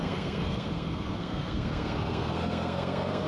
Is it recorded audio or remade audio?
remade